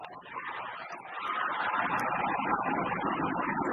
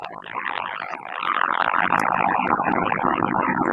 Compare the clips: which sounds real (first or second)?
first